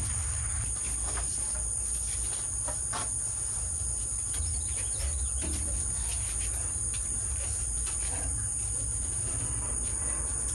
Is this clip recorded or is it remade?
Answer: recorded